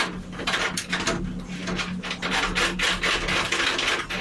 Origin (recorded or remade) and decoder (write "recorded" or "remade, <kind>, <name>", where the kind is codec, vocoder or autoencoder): recorded